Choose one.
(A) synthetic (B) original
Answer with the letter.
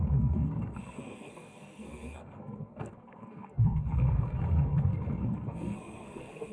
A